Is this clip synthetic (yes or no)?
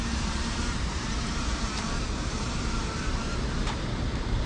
yes